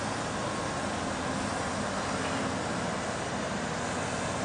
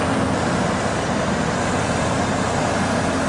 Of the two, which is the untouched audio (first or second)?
first